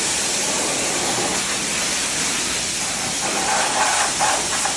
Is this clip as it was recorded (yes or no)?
no